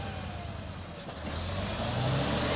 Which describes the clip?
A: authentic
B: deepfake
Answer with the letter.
A